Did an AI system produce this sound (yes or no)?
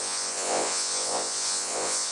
yes